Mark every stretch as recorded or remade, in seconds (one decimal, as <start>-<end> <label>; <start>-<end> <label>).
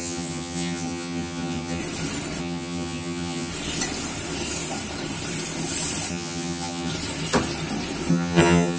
0.0-1.8 remade; 1.8-2.4 recorded; 2.4-3.5 remade; 3.5-6.1 recorded; 6.1-6.9 remade; 6.9-8.1 recorded; 8.1-8.8 remade